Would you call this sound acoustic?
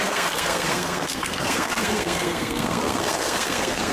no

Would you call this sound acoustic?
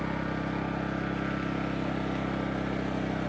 yes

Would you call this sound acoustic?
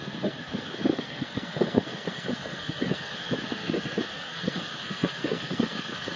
no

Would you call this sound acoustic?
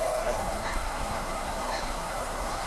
no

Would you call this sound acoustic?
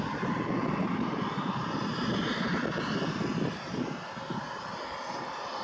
yes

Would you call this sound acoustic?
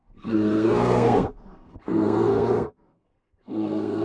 no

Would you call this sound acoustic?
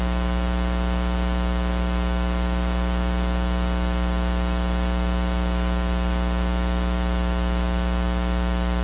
yes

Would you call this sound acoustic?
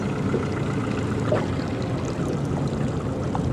yes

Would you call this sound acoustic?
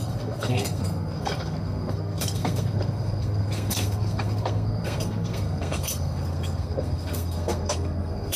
no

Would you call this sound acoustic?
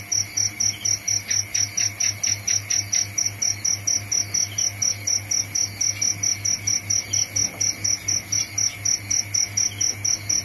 yes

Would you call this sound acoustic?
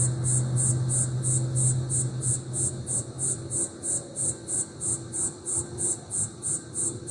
yes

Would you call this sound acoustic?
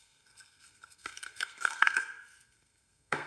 no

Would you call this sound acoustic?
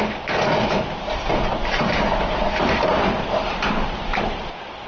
yes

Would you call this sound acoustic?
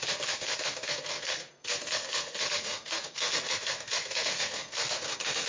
no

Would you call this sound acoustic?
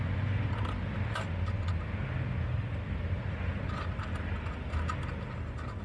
yes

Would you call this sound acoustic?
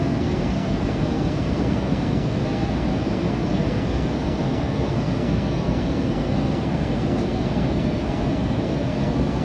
no